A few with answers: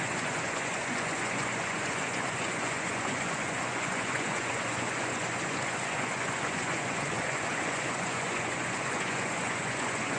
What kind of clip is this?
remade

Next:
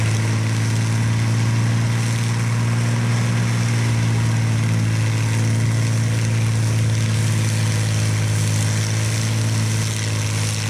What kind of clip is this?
recorded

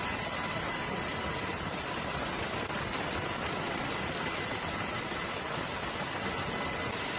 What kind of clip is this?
recorded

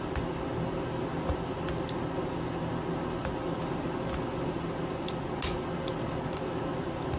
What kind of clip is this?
recorded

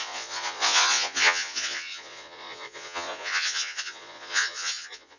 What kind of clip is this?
remade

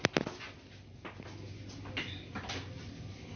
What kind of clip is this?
recorded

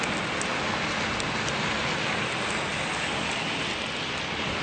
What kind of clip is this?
recorded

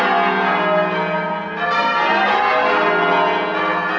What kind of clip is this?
recorded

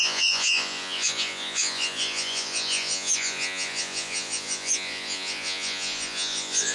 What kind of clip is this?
remade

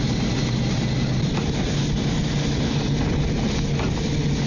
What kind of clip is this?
recorded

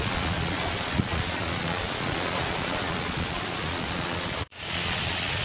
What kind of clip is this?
remade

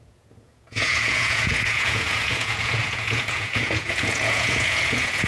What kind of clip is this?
remade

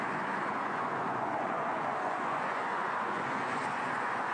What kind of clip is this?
remade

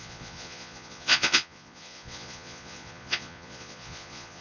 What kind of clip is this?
remade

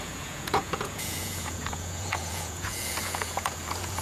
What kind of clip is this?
remade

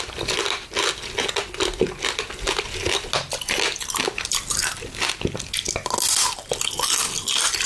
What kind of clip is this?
recorded